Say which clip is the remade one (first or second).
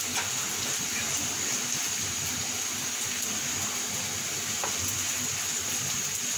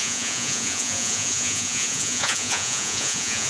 second